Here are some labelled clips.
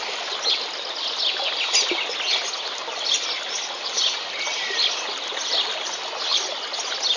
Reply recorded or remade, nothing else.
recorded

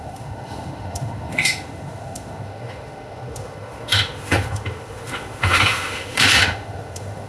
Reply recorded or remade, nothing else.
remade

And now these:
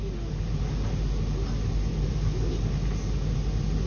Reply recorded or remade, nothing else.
recorded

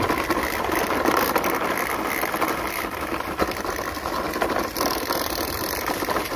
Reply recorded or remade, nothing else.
recorded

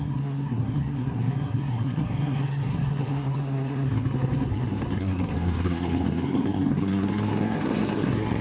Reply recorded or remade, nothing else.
remade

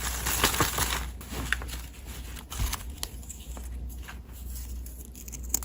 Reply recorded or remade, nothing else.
recorded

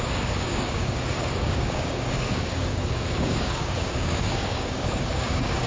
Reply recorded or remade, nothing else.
remade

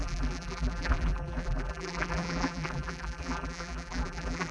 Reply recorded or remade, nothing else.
remade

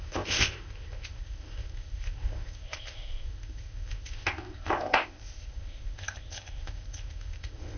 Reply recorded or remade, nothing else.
remade